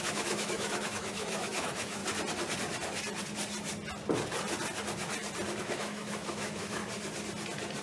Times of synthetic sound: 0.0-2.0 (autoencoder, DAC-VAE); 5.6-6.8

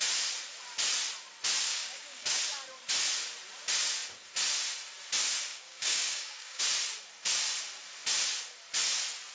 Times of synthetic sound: 1.7-2.4 (codec, DAC); 5.5-6.6

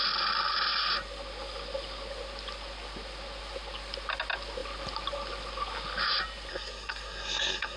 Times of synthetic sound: 6.5-7.8 (codec, SNAC)

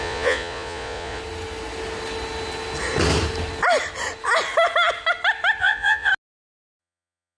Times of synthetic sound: 0.0-1.2 (vocoder, Vocos); 5.6-6.1; 6.8-7.4